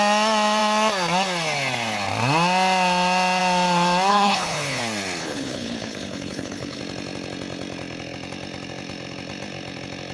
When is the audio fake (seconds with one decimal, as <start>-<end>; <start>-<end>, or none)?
4.1-4.8; 5.2-6.8